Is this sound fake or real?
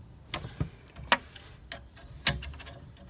real